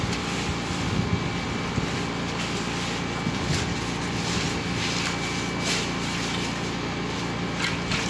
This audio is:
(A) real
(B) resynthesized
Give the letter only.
A